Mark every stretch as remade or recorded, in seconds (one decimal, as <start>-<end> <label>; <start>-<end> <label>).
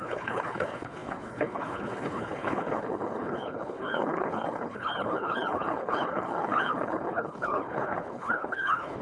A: 0.0-9.0 remade